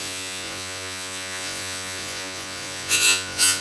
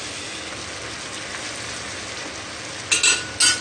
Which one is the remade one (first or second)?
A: first